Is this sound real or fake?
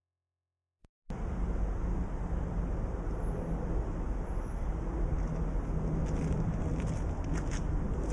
real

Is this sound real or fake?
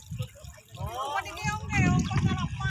real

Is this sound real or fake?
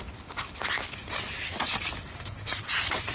real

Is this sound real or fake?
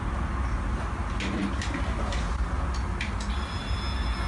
real